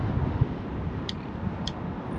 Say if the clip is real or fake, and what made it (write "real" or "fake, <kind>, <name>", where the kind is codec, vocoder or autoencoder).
real